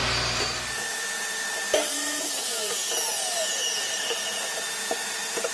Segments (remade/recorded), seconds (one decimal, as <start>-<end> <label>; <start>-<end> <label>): 0.0-2.1 recorded; 2.1-3.9 remade; 3.9-5.5 recorded